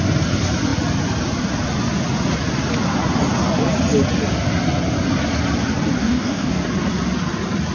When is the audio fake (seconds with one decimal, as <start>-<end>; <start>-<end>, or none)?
6.0-6.6